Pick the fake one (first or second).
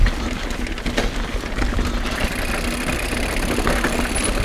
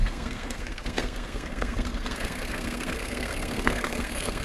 second